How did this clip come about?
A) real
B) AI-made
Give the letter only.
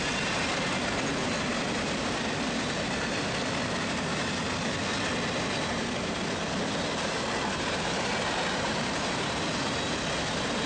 A